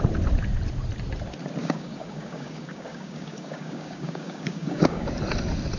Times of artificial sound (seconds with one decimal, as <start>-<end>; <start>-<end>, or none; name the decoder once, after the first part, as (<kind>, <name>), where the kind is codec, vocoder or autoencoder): 1.6-5.1 (codec, DAC)